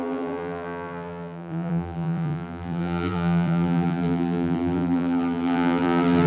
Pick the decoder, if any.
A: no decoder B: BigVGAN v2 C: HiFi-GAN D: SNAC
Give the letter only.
B